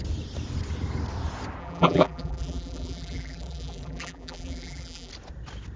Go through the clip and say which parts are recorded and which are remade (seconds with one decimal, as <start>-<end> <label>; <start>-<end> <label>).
0.0-1.6 recorded; 1.6-5.1 remade; 5.1-5.8 recorded